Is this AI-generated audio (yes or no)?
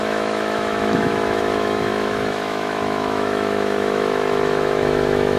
yes